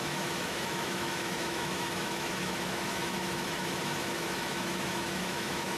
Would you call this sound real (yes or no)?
no